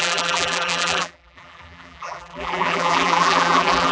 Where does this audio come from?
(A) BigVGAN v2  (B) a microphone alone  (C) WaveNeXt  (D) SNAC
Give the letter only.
A